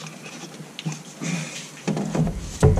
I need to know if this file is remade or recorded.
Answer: recorded